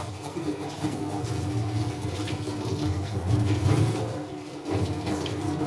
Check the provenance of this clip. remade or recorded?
remade